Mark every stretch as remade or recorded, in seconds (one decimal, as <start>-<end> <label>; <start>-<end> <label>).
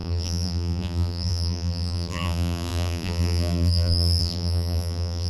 0.0-5.3 remade